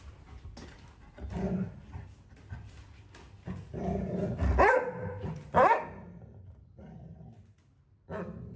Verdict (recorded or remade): recorded